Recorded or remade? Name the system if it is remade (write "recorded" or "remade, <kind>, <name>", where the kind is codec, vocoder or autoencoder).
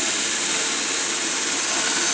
recorded